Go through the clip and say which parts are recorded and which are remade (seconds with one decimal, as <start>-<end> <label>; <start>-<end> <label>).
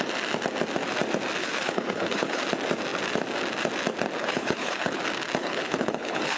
0.0-1.4 recorded; 1.4-2.4 remade; 2.4-4.2 recorded; 4.2-5.0 remade; 5.0-5.4 recorded; 5.4-6.4 remade